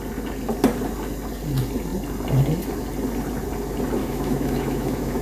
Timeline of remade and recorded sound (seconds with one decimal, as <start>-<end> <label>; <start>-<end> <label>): 0.0-4.0 recorded; 4.0-5.2 remade